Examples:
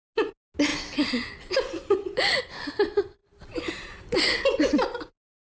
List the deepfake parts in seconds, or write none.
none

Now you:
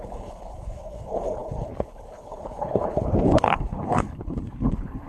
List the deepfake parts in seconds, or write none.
0.0-5.1 (codec, HILCodec)

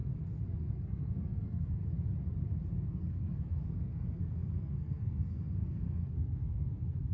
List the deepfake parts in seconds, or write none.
0.5-1.8 (codec, SNAC); 2.9-7.1

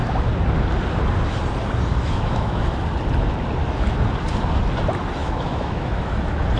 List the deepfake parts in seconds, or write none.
1.9-2.7 (autoencoder, DAC-VAE); 5.2-6.1

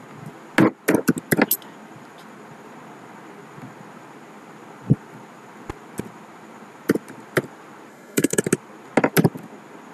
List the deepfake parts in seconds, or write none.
7.9-8.4 (codec, SNAC)

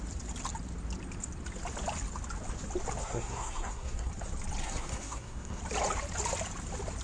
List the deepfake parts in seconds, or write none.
3.0-4.1 (codec, SNAC); 4.6-5.6